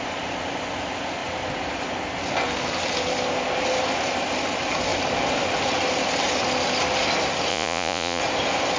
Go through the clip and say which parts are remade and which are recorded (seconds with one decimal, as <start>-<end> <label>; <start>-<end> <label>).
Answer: 0.0-7.5 recorded; 7.5-8.2 remade; 8.2-8.8 recorded

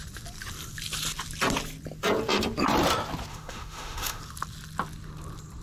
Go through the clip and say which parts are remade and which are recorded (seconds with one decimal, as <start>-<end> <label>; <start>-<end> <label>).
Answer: 0.0-3.3 recorded; 3.3-4.2 remade; 4.2-5.6 recorded

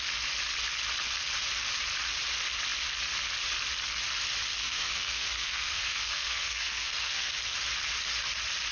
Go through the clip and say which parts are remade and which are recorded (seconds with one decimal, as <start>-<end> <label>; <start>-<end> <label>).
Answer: 0.0-4.6 recorded; 4.6-7.3 remade; 7.3-8.7 recorded

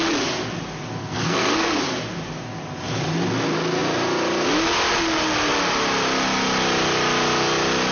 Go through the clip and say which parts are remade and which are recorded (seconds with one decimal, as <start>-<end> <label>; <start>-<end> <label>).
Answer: 0.0-1.0 recorded; 1.0-1.8 remade; 1.8-7.9 recorded

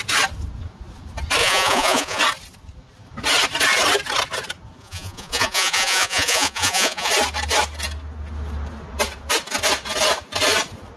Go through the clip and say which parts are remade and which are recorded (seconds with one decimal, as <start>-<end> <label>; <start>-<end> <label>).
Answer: 0.0-1.4 recorded; 1.4-2.2 remade; 2.2-4.8 recorded; 4.8-7.1 remade; 7.1-11.0 recorded

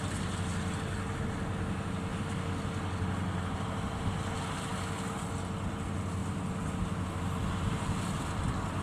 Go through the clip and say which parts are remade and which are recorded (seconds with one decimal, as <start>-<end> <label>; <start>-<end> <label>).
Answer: 0.0-8.8 recorded

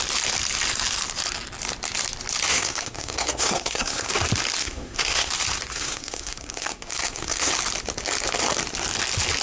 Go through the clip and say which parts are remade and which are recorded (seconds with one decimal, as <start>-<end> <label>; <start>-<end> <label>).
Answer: 0.0-2.5 recorded; 2.5-4.1 remade; 4.1-4.6 recorded; 4.6-5.3 remade; 5.3-5.7 recorded; 5.7-7.5 remade; 7.5-9.4 recorded